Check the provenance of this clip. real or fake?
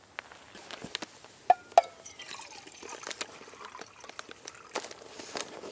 real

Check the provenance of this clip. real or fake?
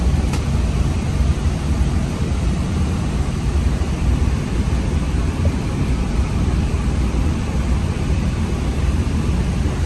fake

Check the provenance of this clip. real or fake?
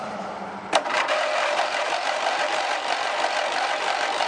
fake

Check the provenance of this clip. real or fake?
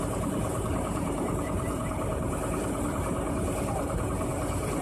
fake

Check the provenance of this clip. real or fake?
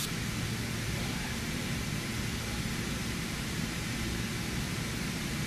fake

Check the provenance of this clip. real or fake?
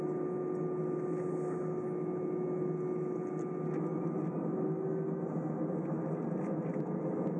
real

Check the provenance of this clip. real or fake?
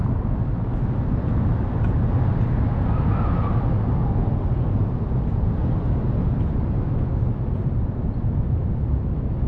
real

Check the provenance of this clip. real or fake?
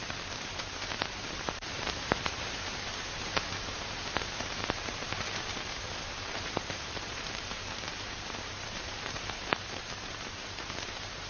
fake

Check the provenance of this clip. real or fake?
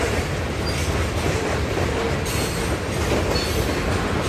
real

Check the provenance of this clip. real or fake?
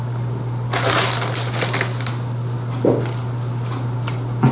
real